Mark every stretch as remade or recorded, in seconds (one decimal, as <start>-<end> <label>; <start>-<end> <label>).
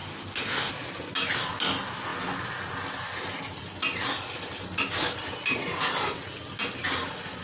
0.0-0.7 remade; 0.7-7.4 recorded